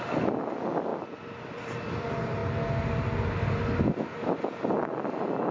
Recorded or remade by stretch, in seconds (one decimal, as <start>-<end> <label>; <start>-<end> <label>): 0.0-0.9 recorded; 0.9-2.0 remade; 2.0-5.5 recorded